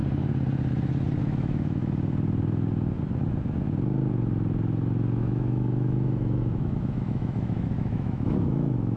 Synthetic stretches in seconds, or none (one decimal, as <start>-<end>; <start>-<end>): 1.2-1.8; 5.2-9.0